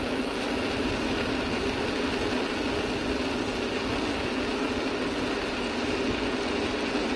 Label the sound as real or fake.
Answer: real